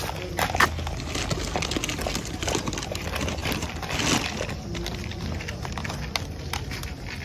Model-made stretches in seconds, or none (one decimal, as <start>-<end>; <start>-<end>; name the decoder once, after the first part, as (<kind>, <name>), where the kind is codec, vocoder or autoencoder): none

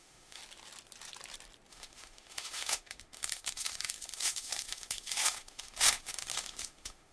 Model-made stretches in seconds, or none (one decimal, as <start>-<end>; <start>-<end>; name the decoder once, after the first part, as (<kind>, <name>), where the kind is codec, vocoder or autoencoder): 0.0-0.4 (autoencoder, DAC-VAE); 1.7-7.1

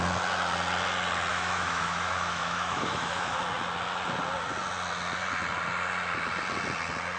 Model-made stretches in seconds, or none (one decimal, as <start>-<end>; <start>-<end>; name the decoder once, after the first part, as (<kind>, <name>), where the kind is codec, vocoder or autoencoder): 1.3-3.4 (autoencoder, DAC-VAE)